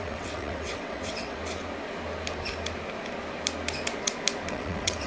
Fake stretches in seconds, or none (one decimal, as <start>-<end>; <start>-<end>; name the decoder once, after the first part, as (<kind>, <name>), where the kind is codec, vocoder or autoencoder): 0.0-1.4 (vocoder, WaveNeXt); 4.5-5.1